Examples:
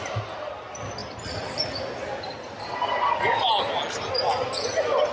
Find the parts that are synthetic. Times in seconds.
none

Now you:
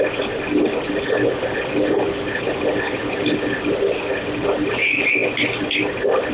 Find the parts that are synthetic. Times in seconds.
none